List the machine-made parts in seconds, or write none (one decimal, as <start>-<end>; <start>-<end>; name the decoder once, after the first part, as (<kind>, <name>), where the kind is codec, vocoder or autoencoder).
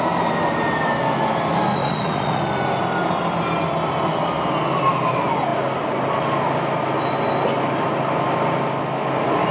1.8-2.4 (vocoder, Vocos)